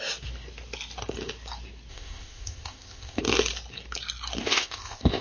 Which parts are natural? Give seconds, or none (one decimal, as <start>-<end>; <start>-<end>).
0.0-1.9; 3.2-4.4

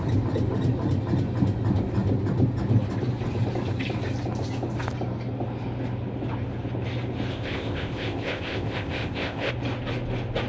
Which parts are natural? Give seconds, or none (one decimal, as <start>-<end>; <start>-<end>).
0.0-7.3; 9.5-10.5

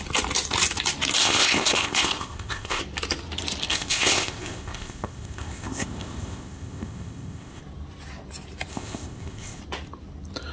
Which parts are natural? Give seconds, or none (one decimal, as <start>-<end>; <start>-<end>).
0.0-1.2; 2.8-3.7; 7.6-8.7; 9.6-10.5

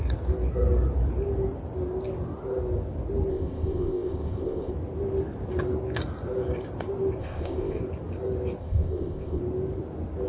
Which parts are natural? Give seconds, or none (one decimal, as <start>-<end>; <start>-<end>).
0.0-3.3; 4.7-7.2; 7.8-8.6; 9.4-10.3

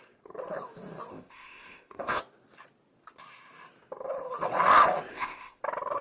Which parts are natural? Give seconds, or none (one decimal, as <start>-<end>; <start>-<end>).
0.0-1.1; 2.2-5.1; 5.6-6.0

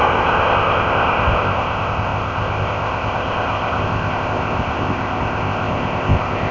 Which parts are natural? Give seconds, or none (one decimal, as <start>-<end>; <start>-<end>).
none